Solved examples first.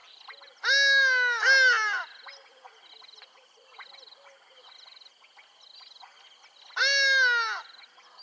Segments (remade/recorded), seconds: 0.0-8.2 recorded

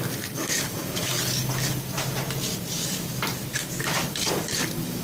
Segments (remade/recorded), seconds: 0.0-1.1 remade; 1.1-4.1 recorded; 4.1-5.0 remade

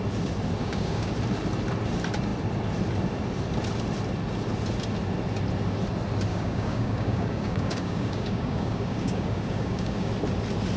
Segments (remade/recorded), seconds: 0.0-0.6 recorded; 0.6-1.1 remade; 1.1-6.3 recorded; 6.3-10.1 remade; 10.1-10.8 recorded